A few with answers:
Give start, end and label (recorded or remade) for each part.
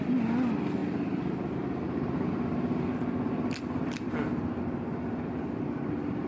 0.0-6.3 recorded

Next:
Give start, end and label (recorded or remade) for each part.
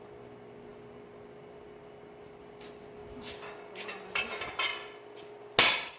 0.0-6.0 recorded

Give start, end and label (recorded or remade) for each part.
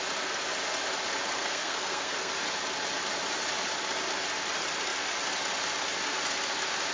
0.0-1.4 recorded; 1.4-2.3 remade; 2.3-6.9 recorded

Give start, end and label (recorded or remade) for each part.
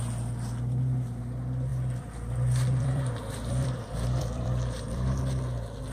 0.0-1.7 recorded; 1.7-5.2 remade; 5.2-5.9 recorded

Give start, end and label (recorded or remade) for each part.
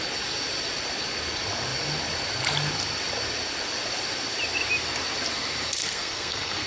0.0-5.8 recorded; 5.8-6.7 remade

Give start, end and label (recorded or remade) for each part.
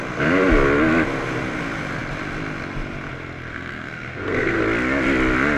0.0-3.5 recorded; 3.5-4.6 remade; 4.6-5.6 recorded